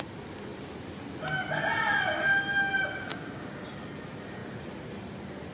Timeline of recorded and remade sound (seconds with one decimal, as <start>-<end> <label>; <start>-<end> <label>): 0.0-5.5 recorded